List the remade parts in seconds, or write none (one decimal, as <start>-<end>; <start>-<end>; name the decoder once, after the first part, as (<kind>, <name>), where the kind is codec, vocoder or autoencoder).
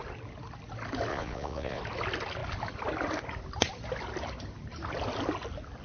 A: 1.1-1.8 (vocoder, Vocos)